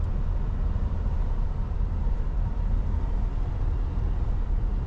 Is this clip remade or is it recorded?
recorded